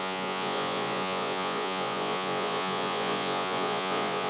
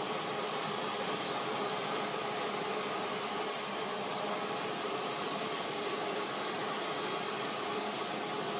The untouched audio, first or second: second